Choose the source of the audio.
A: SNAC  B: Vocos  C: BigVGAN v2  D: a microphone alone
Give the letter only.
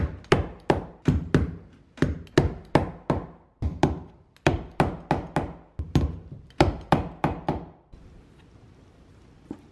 D